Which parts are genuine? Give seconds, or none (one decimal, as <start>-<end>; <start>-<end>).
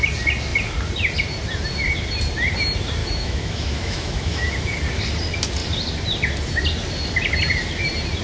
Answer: 0.0-3.0; 4.7-8.2